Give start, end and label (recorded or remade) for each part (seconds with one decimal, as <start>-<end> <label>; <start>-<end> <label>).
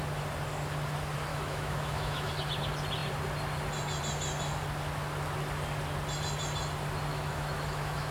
0.0-1.3 recorded; 1.3-2.3 remade; 2.3-7.1 recorded; 7.1-8.1 remade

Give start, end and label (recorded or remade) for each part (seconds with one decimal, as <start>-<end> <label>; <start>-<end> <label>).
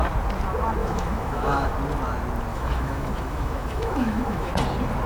0.0-0.8 recorded; 0.8-1.7 remade; 1.7-2.5 recorded; 2.5-4.5 remade; 4.5-5.1 recorded